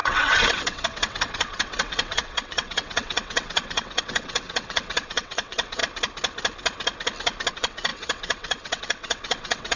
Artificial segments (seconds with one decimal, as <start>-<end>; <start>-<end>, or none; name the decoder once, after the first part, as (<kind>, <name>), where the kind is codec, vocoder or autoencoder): 0.0-5.8 (vocoder, WaveNeXt); 7.5-9.8